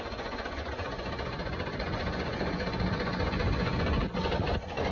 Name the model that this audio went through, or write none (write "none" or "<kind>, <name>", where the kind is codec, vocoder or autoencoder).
vocoder, Vocos